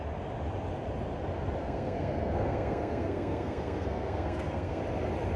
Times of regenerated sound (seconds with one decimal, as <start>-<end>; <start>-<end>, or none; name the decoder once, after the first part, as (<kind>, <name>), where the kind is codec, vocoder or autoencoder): 1.6-4.8 (codec, SNAC)